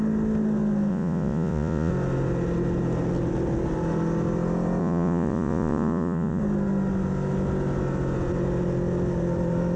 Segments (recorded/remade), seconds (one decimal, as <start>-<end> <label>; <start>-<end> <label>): 0.0-0.9 recorded; 0.9-1.9 remade; 1.9-4.8 recorded; 4.8-6.4 remade; 6.4-9.8 recorded

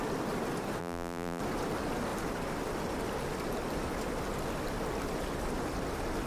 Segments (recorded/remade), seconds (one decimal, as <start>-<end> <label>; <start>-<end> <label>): 0.0-0.8 recorded; 0.8-1.4 remade; 1.4-6.3 recorded

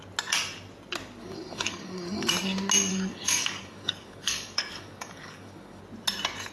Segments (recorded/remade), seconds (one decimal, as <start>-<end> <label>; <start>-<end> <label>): 0.0-1.2 recorded; 1.2-2.3 remade; 2.3-2.9 recorded; 2.9-5.8 remade; 5.8-6.5 recorded

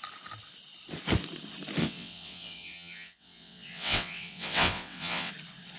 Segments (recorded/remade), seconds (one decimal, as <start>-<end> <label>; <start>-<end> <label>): 0.0-1.8 recorded; 1.8-5.3 remade; 5.3-5.8 recorded